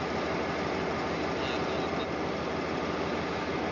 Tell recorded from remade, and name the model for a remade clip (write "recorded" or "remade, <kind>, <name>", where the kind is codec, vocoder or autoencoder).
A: recorded